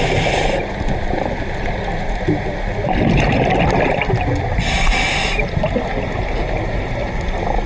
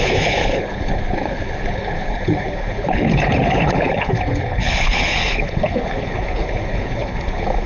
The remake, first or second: second